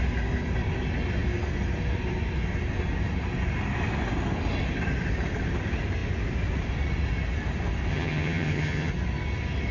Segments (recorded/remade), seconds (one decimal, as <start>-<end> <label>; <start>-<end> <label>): 0.0-7.9 recorded; 7.9-8.9 remade; 8.9-9.7 recorded